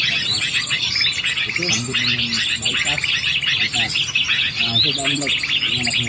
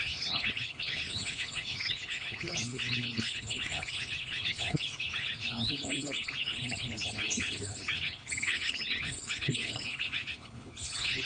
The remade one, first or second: second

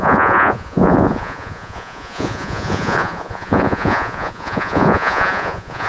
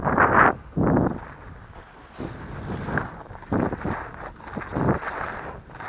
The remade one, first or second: first